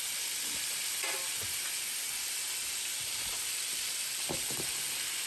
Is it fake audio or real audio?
real